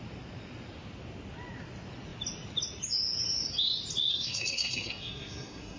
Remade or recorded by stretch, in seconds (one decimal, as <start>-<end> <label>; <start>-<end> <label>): 0.0-4.1 recorded; 4.1-5.8 remade